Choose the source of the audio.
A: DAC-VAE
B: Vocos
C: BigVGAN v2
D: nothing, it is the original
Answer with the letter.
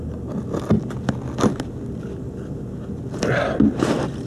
D